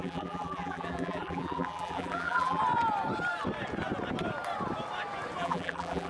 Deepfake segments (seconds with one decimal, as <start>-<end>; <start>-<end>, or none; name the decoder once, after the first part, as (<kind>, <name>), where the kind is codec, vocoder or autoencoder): 0.0-2.6 (vocoder, BigVGAN v2); 5.4-6.1